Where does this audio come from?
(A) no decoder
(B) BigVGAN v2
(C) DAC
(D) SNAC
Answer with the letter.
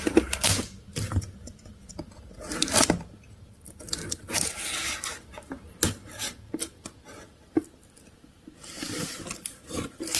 A